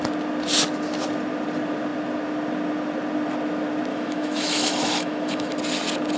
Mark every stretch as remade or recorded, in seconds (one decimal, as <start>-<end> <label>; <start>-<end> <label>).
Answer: 0.0-3.9 recorded; 3.9-5.5 remade; 5.5-6.2 recorded